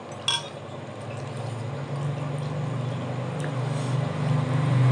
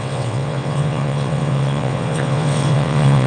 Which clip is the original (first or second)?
first